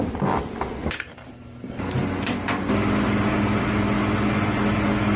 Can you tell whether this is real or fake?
real